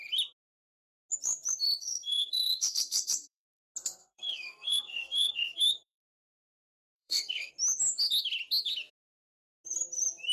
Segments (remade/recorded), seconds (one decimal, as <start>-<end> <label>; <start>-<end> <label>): 0.0-1.8 recorded; 1.8-3.6 remade; 3.6-4.0 recorded; 4.0-7.5 remade; 7.5-10.3 recorded